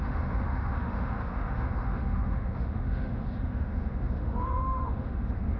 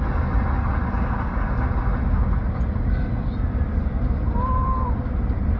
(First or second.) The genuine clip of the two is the second